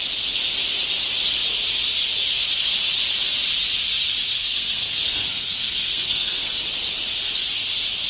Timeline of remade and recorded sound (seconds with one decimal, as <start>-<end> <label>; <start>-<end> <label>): 0.0-4.4 recorded; 4.4-6.5 remade; 6.5-8.1 recorded